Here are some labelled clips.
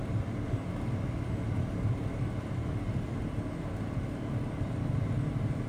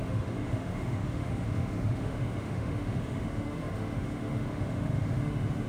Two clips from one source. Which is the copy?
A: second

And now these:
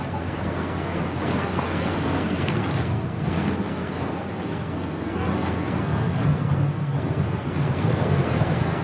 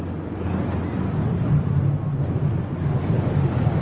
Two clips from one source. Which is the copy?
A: first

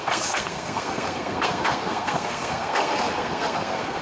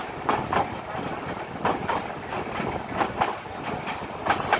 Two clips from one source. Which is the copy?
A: first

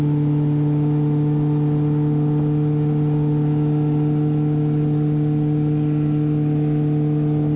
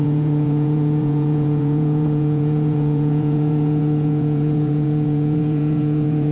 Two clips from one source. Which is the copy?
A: second